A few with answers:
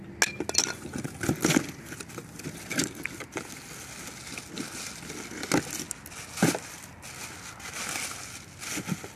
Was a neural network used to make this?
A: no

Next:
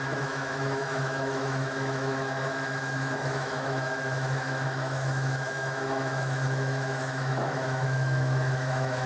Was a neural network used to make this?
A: yes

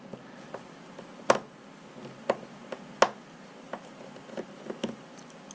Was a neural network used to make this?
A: no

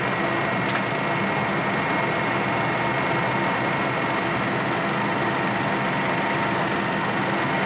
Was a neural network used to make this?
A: no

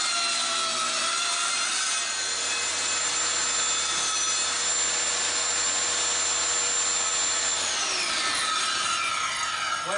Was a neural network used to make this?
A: no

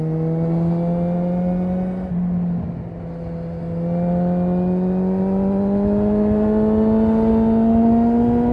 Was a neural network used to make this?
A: no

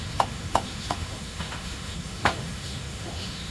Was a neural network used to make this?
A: yes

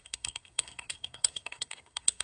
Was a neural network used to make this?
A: yes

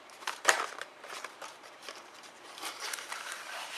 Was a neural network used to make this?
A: yes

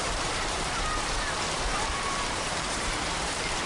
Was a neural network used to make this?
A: yes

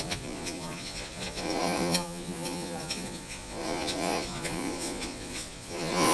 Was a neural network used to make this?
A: yes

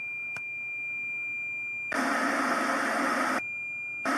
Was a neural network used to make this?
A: no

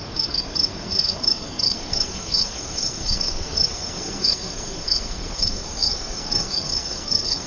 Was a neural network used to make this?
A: yes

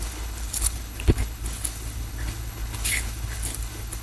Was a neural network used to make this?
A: yes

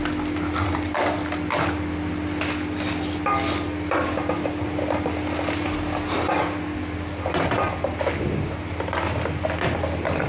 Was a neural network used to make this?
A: no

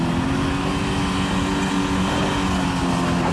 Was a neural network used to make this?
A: no